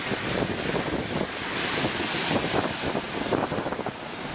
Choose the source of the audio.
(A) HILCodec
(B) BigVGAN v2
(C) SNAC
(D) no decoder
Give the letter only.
D